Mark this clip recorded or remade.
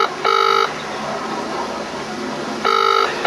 recorded